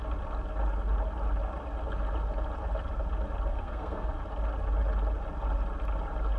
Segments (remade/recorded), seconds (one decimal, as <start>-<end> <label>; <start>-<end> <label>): 0.0-3.5 recorded; 3.5-4.1 remade; 4.1-6.4 recorded